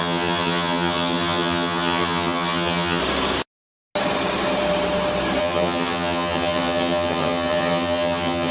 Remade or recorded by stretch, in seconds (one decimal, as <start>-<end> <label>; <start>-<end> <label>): 0.0-3.0 remade; 3.0-5.4 recorded; 5.4-8.5 remade